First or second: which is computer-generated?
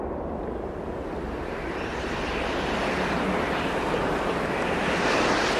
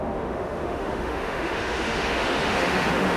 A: second